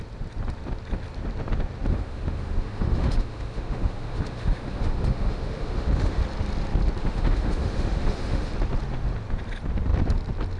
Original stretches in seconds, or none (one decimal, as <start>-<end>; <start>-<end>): 0.0-1.9; 6.2-7.0; 8.5-10.6